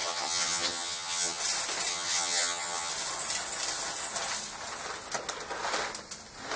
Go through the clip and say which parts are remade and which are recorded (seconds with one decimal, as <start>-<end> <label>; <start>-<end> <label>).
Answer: 0.0-1.4 remade; 1.4-1.9 recorded; 1.9-2.9 remade; 2.9-6.6 recorded